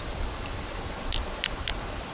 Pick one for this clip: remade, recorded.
remade